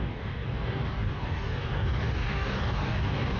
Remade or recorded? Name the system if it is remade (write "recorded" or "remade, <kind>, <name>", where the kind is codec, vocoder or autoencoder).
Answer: remade, codec, DAC